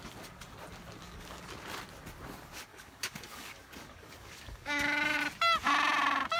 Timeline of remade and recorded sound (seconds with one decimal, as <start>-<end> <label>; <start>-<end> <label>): 0.0-1.0 recorded; 1.0-1.5 remade; 1.5-2.7 recorded; 2.7-5.2 remade; 5.2-6.4 recorded